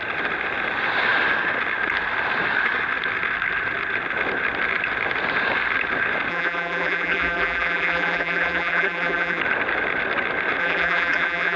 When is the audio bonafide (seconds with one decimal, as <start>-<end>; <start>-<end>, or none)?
0.0-6.3; 9.4-10.6